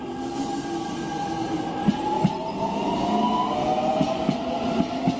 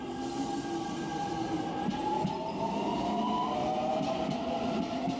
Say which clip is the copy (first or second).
second